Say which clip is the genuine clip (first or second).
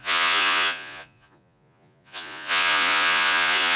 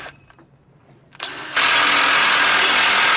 second